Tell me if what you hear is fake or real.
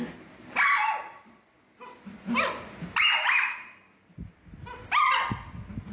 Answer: real